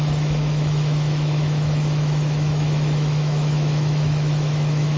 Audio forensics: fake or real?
fake